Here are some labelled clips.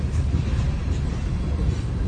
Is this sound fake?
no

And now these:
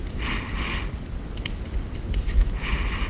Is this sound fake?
no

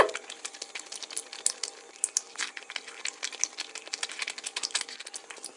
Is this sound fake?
no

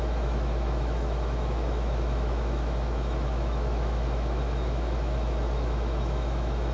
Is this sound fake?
yes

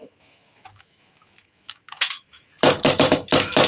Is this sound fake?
yes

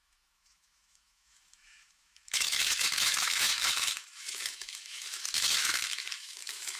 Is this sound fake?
yes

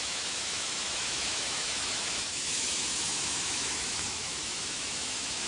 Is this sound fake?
yes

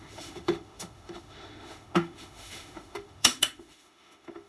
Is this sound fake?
yes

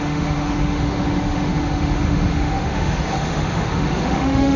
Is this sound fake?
yes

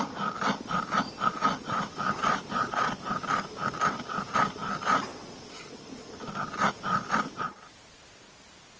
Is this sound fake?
no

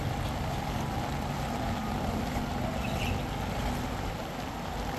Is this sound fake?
no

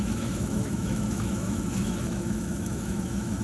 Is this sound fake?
yes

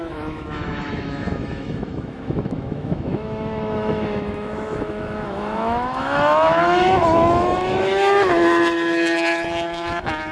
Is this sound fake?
yes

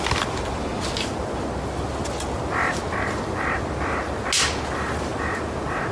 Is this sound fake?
no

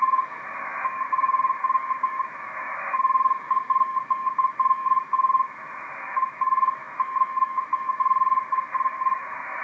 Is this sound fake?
yes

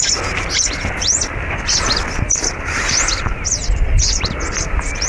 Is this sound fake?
no